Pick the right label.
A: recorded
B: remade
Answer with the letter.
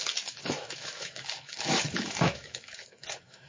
B